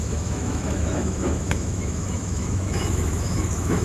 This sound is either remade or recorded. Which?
remade